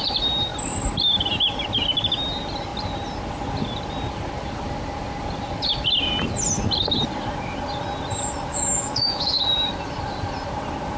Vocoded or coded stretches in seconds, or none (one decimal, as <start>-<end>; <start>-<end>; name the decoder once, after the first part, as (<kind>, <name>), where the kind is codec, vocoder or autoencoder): 8.5-9.4 (autoencoder, DAC-VAE)